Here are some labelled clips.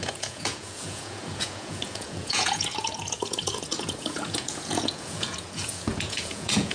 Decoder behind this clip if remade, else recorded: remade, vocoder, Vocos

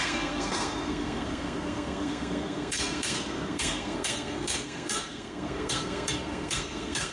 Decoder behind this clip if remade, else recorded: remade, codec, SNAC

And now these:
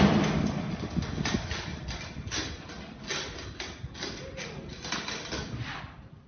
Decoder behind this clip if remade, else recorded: recorded